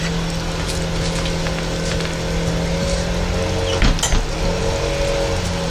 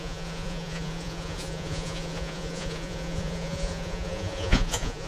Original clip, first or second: first